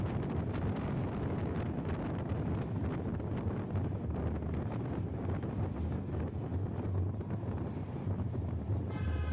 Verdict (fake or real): real